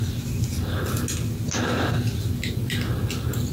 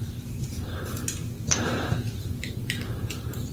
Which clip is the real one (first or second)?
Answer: first